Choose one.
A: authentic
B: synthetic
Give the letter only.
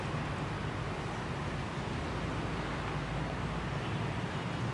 A